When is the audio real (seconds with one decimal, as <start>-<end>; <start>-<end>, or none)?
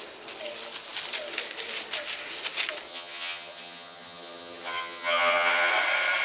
0.0-2.9; 5.7-6.2